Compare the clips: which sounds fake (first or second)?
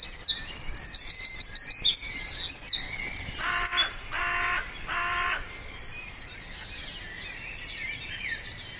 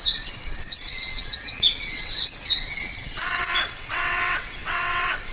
second